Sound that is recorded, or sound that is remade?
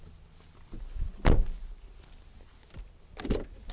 recorded